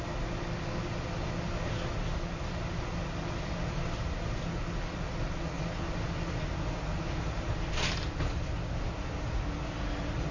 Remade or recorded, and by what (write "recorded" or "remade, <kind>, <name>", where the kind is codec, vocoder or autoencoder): recorded